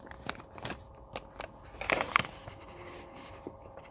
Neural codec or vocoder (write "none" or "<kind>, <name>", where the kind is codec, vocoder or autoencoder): none